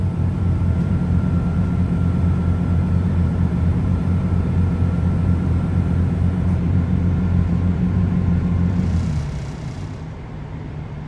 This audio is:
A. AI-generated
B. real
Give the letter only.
A